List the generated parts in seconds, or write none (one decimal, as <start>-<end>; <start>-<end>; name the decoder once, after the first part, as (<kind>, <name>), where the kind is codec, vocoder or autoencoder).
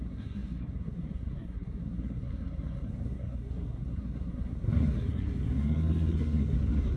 0.0-7.0 (codec, SNAC)